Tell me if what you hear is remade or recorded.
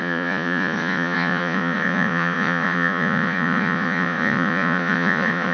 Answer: remade